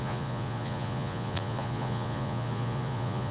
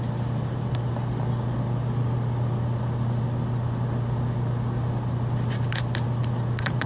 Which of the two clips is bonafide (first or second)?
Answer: second